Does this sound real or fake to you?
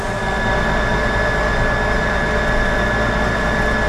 real